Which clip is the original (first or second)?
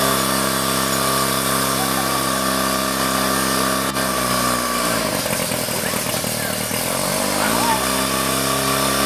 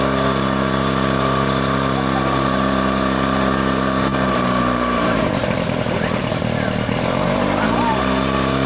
first